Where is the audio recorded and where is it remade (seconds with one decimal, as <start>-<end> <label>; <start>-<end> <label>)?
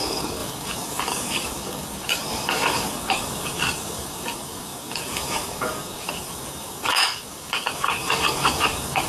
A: 0.0-9.1 remade